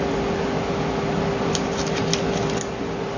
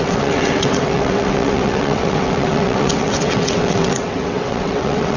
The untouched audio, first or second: first